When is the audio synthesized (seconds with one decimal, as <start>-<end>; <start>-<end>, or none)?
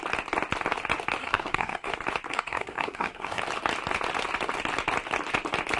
1.2-1.9; 2.3-3.4